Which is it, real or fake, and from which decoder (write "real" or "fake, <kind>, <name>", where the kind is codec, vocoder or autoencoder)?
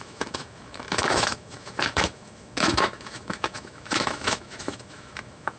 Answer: fake, autoencoder, DAC-VAE